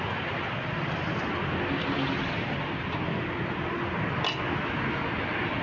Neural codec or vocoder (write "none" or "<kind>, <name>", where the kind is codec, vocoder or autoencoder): none